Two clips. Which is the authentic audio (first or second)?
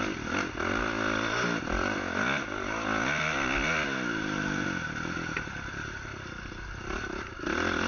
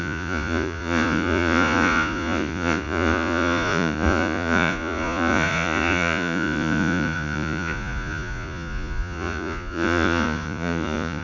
first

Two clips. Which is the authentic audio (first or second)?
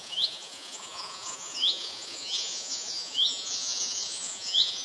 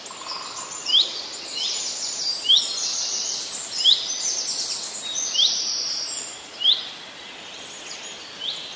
second